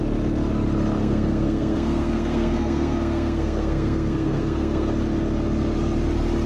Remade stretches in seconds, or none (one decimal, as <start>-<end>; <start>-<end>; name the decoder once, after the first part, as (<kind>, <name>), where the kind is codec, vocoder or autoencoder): 1.0-4.9 (codec, SNAC)